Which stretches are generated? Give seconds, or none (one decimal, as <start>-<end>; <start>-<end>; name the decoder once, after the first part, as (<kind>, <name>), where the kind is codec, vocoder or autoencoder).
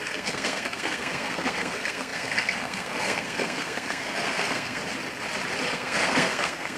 0.0-4.8 (codec, SNAC); 5.7-6.8